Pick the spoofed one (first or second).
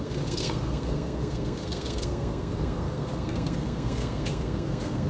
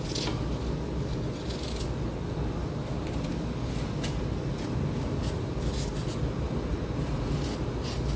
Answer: first